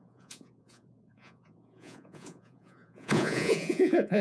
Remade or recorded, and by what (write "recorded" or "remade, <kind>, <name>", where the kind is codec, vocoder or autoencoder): remade, vocoder, Vocos